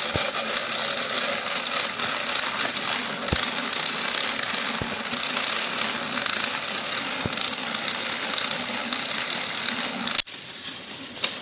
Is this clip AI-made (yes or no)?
no